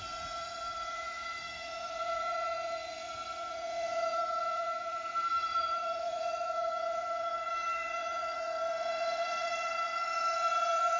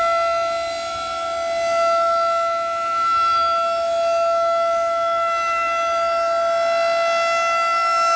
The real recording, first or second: second